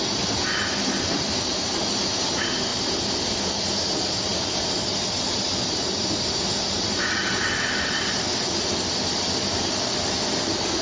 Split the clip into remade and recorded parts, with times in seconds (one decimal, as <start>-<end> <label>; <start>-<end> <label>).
0.0-10.8 recorded